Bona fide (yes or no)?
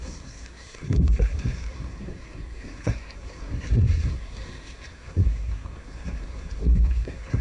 no